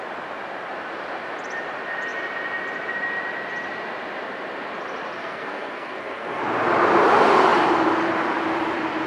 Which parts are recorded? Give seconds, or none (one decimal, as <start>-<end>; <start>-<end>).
0.0-5.2; 6.4-9.1

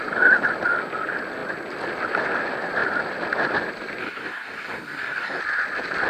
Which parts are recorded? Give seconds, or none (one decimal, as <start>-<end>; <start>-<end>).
0.0-4.0; 5.4-6.1

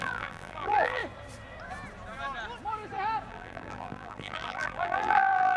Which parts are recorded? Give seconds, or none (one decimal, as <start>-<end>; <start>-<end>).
1.0-3.3